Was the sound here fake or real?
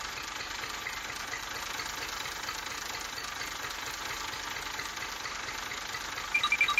real